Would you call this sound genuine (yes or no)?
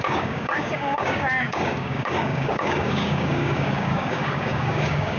no